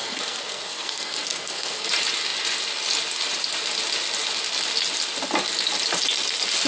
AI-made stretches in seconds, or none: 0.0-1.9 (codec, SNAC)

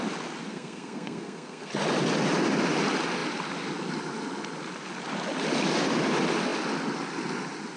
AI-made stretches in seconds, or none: 0.5-1.7 (codec, SNAC)

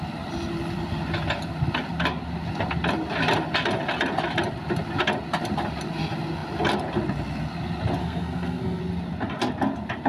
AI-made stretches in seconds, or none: 8.0-8.8 (codec, SNAC)

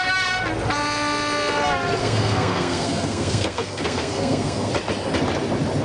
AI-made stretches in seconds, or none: 2.0-4.7 (codec, SNAC)

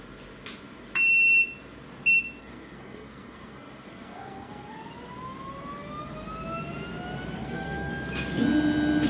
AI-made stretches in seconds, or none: 2.4-4.9 (codec, SNAC); 7.4-7.9